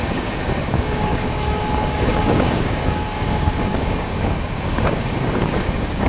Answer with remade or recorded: remade